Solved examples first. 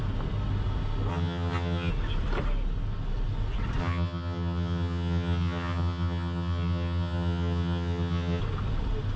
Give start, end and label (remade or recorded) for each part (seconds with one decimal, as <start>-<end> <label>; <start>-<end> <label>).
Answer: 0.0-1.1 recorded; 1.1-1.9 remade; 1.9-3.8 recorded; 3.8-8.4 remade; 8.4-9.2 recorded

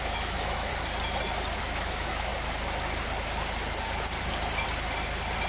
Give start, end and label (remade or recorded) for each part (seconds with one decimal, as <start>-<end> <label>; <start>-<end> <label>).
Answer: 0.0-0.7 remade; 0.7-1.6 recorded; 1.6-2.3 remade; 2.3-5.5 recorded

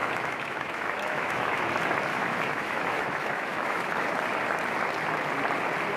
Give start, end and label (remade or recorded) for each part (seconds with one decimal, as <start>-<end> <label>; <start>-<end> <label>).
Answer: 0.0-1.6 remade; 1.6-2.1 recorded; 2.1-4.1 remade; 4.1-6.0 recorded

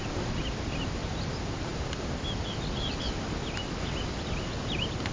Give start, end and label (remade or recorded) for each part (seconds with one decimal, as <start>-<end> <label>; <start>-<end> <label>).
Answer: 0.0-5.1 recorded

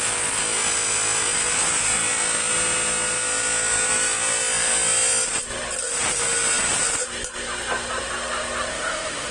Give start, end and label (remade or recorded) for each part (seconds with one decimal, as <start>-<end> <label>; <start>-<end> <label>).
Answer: 0.0-8.7 recorded; 8.7-9.3 remade